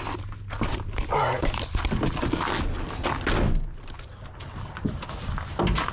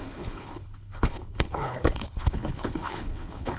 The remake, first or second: second